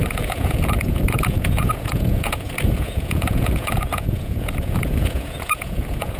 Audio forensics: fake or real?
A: fake